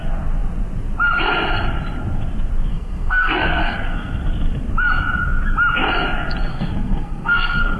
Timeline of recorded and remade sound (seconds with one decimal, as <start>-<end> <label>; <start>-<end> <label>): 0.0-2.7 recorded; 2.7-4.2 remade; 4.2-6.5 recorded; 6.5-7.8 remade